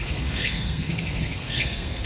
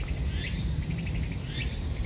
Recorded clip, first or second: second